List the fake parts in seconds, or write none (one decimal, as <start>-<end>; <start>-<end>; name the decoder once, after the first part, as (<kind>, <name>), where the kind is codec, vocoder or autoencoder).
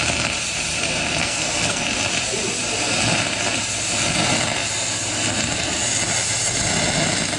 1.2-1.8 (codec, SNAC)